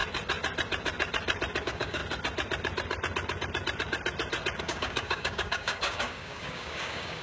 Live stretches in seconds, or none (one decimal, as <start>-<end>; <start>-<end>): 0.0-1.6; 2.0-4.6